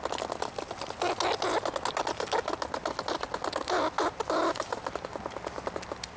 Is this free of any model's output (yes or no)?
yes